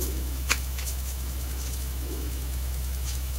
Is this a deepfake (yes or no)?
yes